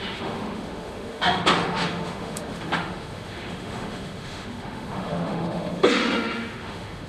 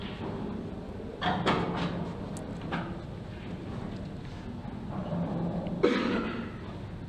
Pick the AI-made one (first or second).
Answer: first